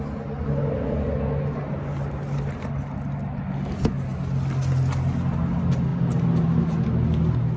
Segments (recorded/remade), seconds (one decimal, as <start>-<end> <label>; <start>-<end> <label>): 0.0-7.6 recorded